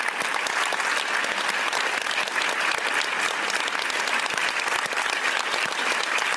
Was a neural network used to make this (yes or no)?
no